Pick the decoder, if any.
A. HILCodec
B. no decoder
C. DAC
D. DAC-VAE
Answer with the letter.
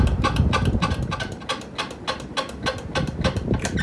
B